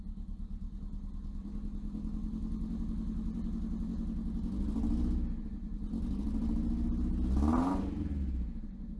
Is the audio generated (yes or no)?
no